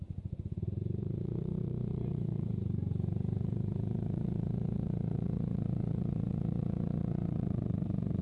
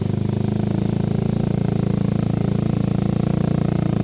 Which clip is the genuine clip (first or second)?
second